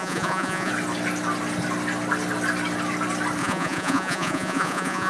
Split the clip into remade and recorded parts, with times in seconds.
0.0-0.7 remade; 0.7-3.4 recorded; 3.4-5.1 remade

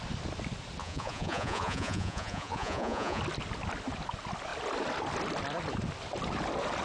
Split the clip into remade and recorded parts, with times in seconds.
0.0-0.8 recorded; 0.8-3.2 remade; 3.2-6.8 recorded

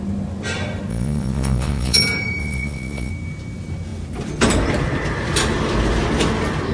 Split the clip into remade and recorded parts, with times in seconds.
0.0-0.9 recorded; 0.9-2.0 remade; 2.0-2.4 recorded; 2.4-3.1 remade; 3.1-6.7 recorded

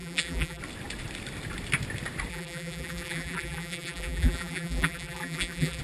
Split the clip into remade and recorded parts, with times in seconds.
0.0-0.6 remade; 0.6-2.3 recorded; 2.3-5.8 remade

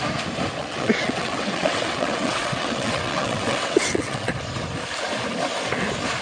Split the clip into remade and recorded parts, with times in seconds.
0.0-0.6 recorded; 0.6-4.3 remade; 4.3-6.2 recorded

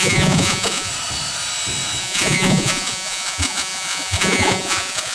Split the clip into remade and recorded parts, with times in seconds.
0.0-0.9 remade; 0.9-2.0 recorded; 2.0-5.1 remade